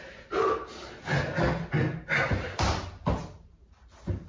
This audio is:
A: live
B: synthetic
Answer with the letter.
A